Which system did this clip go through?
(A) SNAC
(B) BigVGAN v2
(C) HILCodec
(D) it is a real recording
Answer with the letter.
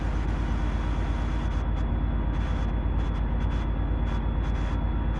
D